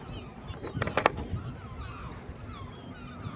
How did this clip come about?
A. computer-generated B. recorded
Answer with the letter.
B